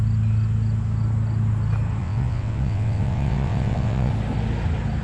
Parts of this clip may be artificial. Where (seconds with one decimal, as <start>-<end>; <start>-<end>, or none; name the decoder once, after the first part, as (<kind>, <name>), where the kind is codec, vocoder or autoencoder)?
2.0-4.1 (vocoder, WaveNeXt)